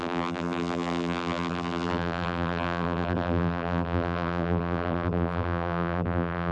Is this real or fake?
fake